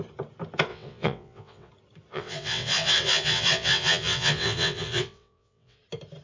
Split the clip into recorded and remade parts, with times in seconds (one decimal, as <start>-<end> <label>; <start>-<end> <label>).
0.0-0.7 recorded; 0.7-1.7 remade; 1.7-2.1 recorded; 2.1-5.8 remade; 5.8-6.2 recorded